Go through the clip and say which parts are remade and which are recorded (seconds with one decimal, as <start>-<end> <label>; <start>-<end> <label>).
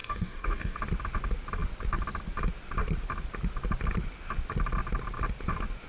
0.0-0.8 remade; 0.8-5.9 recorded